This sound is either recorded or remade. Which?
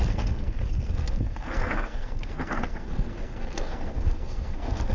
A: remade